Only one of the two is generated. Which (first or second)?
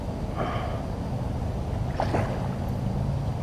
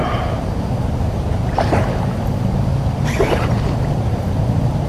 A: second